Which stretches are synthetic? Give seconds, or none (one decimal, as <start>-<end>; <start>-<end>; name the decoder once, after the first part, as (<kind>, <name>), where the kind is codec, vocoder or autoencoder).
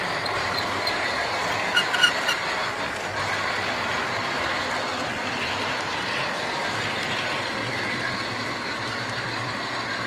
0.0-1.5 (vocoder, BigVGAN v2)